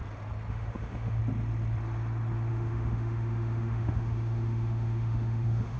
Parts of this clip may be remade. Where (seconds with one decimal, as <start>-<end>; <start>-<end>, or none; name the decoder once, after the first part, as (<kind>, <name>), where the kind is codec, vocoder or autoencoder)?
0.5-1.2 (autoencoder, DAC-VAE); 2.5-5.8